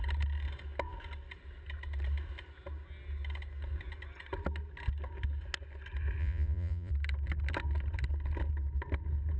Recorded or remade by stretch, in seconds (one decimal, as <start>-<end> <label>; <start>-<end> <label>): 0.0-6.2 recorded; 6.2-6.9 remade; 6.9-9.4 recorded